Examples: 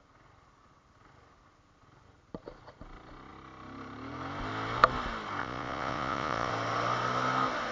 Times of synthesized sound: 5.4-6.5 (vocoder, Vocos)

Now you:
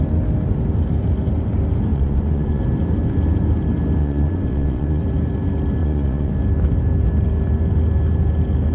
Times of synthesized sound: 1.9-2.6 (vocoder, Vocos); 4.0-5.0; 5.8-6.3

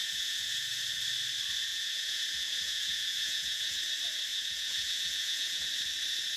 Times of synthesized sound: 0.0-0.8 (vocoder, Vocos); 1.7-3.8; 4.3-5.7

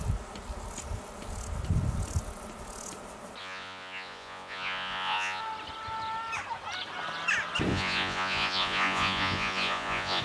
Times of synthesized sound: 3.4-5.4 (vocoder, Vocos); 7.7-10.2

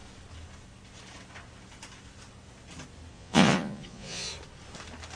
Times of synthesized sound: 3.1-4.3 (vocoder, Vocos)

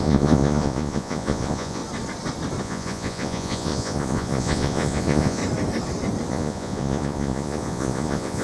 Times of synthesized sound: 0.0-1.8 (vocoder, Vocos); 2.6-5.4; 6.3-8.4